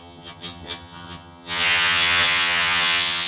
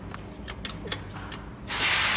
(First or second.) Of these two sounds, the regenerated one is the first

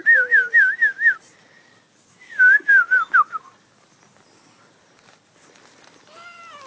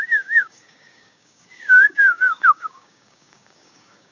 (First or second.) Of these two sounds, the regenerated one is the second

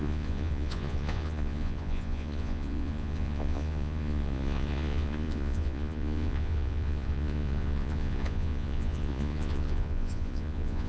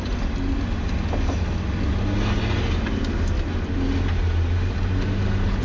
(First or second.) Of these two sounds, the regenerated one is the first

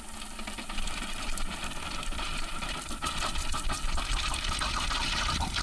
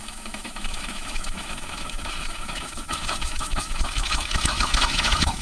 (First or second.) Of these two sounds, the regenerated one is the second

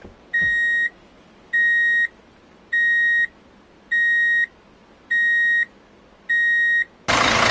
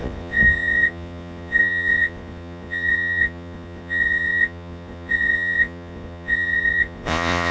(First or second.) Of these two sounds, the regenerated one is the second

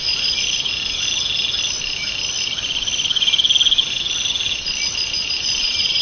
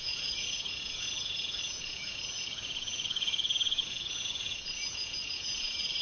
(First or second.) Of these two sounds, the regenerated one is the second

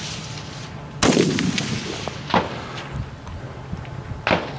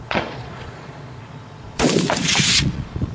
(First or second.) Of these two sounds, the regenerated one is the second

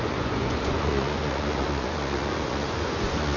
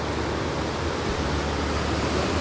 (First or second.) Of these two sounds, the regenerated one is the first